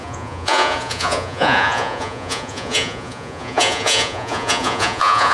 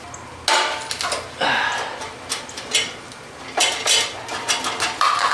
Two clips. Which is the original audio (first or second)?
second